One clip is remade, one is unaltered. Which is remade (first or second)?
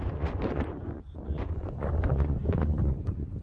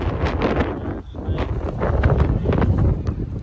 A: first